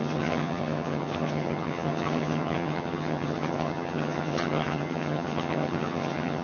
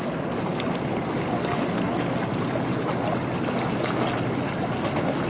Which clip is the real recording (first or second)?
second